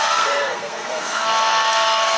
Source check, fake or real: fake